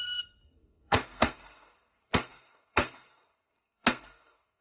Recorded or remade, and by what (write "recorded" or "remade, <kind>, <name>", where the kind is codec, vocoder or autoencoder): remade, codec, SNAC